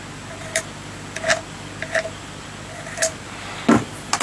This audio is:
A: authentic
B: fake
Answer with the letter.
A